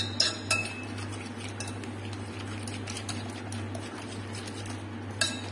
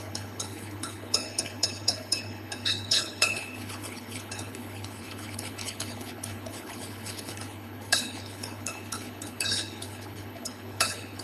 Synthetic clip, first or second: second